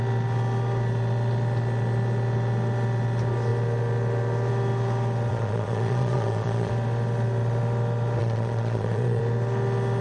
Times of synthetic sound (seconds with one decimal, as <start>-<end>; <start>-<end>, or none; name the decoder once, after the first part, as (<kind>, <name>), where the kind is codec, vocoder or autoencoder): 5.3-6.7 (vocoder, Vocos); 8.2-9.2